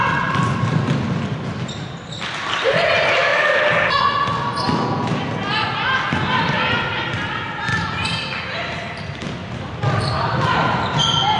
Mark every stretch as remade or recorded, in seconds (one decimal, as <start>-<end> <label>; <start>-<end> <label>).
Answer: 0.0-7.7 recorded; 7.7-9.0 remade; 9.0-9.4 recorded; 9.4-10.7 remade; 10.7-11.4 recorded